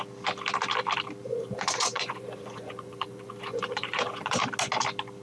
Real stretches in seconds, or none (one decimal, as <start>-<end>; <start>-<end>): 0.0-1.3; 4.4-5.2